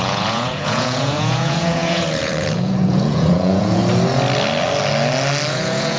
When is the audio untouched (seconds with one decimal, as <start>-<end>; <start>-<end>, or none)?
3.8-5.5